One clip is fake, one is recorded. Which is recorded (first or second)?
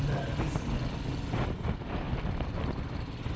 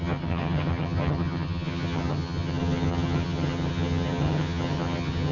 first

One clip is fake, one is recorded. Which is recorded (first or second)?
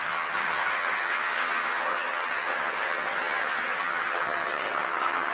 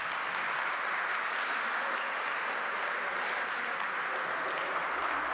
second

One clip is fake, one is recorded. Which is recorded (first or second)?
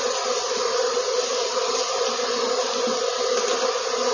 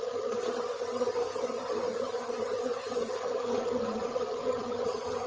first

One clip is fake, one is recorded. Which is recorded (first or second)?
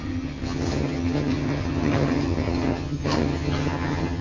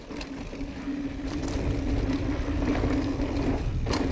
second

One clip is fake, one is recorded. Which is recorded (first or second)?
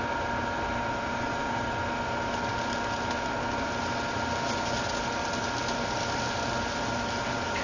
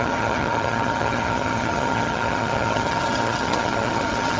first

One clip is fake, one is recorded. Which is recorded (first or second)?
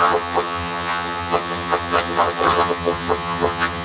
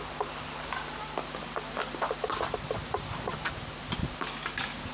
second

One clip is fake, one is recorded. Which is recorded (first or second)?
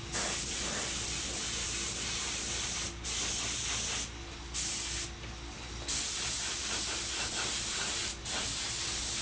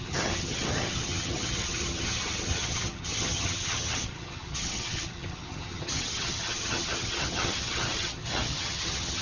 first